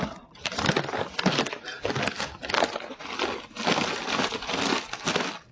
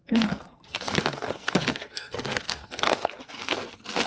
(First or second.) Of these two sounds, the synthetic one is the second